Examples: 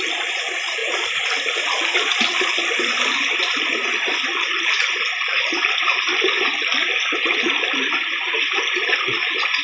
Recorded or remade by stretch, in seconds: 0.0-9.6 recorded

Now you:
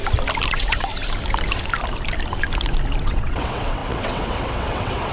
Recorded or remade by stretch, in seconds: 0.0-0.5 recorded; 0.5-0.9 remade; 0.9-3.0 recorded; 3.0-5.1 remade